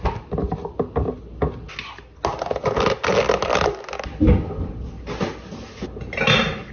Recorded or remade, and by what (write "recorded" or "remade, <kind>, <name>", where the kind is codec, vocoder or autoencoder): recorded